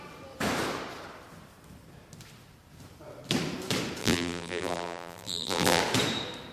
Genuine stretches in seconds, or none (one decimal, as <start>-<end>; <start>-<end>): 0.0-4.0; 5.8-6.5